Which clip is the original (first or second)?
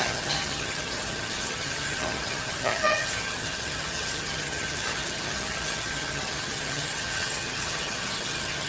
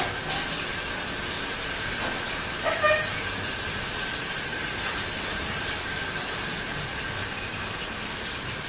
second